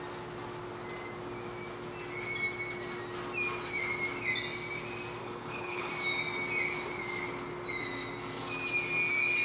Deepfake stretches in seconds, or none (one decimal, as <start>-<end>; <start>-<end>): 5.2-5.9